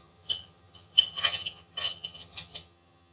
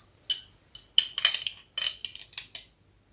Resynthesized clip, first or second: first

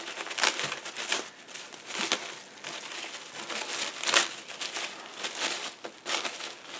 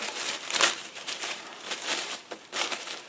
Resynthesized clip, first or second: second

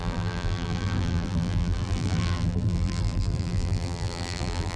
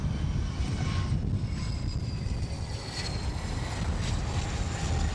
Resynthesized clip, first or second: first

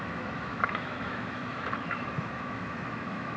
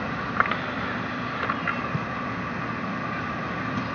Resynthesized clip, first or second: first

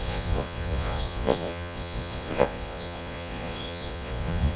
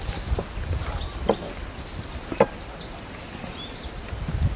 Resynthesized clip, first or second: first